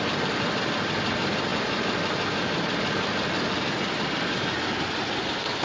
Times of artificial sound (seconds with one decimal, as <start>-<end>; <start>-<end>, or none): none